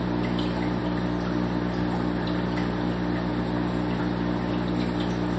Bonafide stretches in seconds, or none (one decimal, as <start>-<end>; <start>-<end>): 0.0-5.4